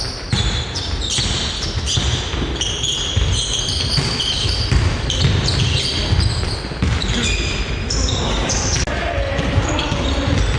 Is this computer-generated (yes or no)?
no